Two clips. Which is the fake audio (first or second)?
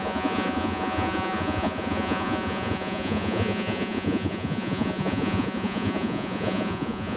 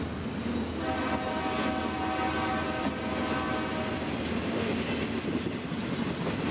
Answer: first